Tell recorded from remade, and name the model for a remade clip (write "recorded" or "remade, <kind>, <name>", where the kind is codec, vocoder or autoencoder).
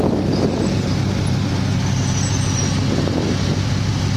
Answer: recorded